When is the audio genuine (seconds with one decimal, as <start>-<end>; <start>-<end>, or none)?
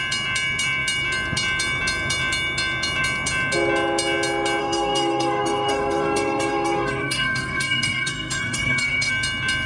0.0-4.6; 9.1-9.7